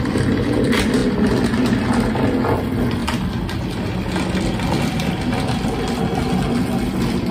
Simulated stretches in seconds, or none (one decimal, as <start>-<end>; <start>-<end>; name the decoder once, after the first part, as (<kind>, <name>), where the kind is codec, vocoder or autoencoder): none